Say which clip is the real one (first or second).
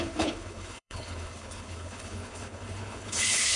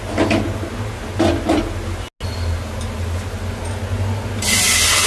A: second